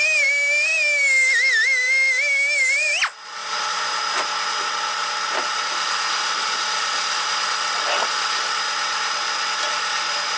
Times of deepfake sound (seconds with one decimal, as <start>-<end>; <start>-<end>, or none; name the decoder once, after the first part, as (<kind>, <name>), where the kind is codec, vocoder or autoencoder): 3.4-4.0 (vocoder, BigVGAN v2); 6.4-7.3